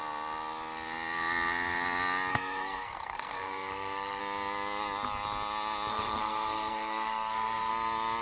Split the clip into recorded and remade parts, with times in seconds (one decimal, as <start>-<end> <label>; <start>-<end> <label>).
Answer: 0.0-2.3 recorded; 2.3-4.2 remade; 4.2-5.9 recorded; 5.9-7.7 remade; 7.7-8.2 recorded